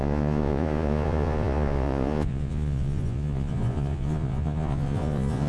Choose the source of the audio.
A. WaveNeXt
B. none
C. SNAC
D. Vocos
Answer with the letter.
D